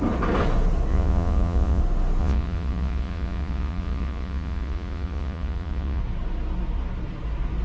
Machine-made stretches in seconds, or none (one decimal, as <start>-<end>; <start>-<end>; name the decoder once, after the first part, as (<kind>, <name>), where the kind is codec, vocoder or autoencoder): 0.9-1.8 (vocoder, Vocos); 2.2-6.0